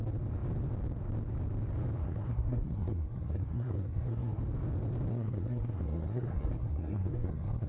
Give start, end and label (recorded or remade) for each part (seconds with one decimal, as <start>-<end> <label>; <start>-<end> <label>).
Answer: 0.0-2.0 recorded; 2.0-4.4 remade; 4.4-5.1 recorded; 5.1-7.7 remade